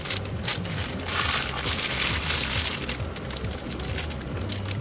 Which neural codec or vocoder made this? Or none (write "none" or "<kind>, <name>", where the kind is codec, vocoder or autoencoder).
none